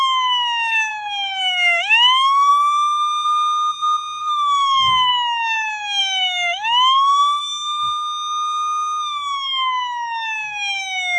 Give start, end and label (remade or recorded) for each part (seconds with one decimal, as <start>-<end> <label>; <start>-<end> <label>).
0.0-0.9 remade; 0.9-1.4 recorded; 1.4-2.5 remade; 2.5-4.2 recorded; 4.2-5.1 remade; 5.1-6.0 recorded; 6.0-7.4 remade; 7.4-11.2 recorded